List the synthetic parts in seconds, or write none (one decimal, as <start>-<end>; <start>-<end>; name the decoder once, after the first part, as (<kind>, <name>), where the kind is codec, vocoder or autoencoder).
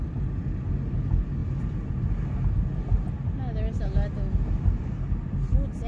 none